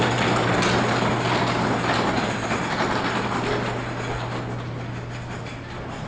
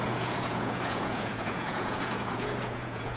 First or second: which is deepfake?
second